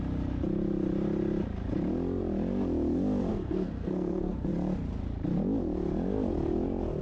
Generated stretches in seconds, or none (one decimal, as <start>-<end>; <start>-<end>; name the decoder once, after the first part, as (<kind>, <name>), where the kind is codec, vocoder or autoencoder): 3.3-4.5 (codec, SNAC)